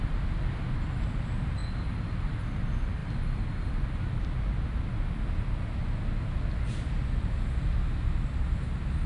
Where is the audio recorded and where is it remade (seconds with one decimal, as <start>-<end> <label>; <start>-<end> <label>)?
0.0-1.6 recorded; 1.6-2.4 remade; 2.4-9.1 recorded